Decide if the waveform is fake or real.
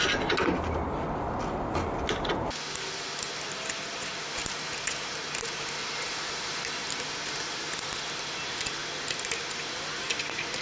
real